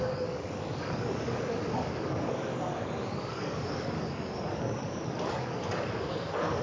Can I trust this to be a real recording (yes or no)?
no